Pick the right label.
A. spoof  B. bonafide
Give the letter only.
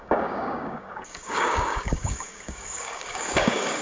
A